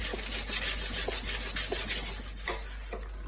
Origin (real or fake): real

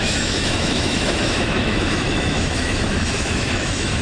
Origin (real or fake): fake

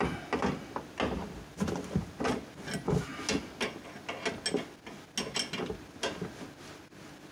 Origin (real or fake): real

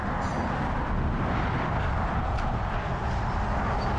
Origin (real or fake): real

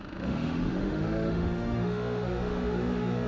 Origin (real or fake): fake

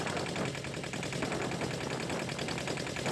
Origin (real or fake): real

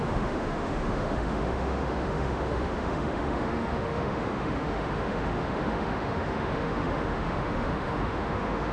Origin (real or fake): fake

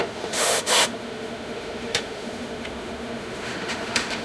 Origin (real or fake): fake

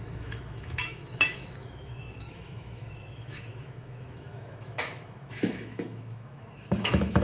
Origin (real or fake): fake